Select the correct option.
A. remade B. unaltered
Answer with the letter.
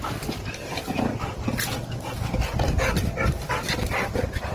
B